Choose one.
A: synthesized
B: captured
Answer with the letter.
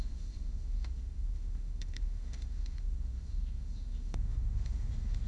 A